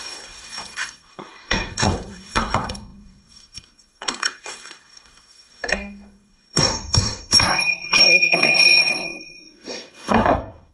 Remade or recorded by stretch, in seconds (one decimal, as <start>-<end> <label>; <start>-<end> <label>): 0.0-10.7 remade